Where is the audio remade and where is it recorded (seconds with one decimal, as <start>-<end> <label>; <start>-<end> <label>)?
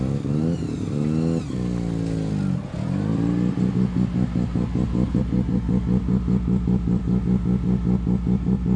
0.0-8.8 recorded